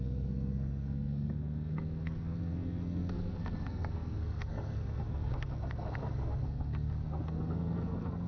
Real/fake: fake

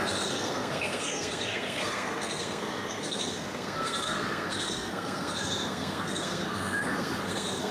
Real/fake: fake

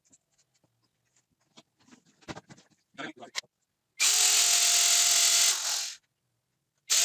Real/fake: real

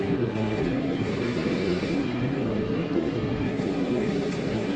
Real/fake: fake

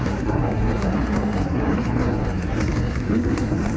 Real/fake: fake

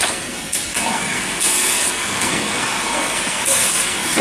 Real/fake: fake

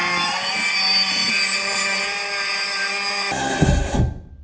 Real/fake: real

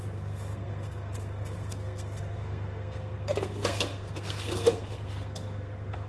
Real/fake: fake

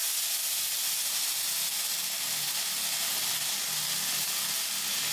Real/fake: real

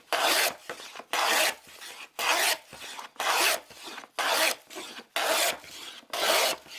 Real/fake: real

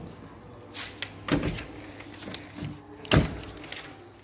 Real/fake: real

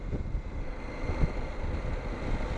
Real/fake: real